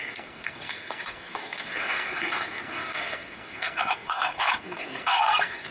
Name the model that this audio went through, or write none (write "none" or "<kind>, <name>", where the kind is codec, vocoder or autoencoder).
codec, SNAC